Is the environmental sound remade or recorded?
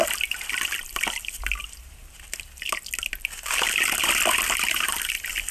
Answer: recorded